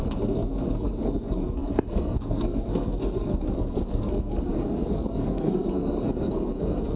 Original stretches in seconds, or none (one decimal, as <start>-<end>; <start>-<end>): none